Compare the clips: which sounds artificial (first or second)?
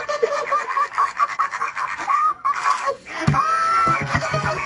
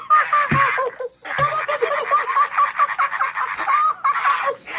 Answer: first